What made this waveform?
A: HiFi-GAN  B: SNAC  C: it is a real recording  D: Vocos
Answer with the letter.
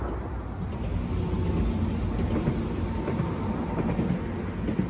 C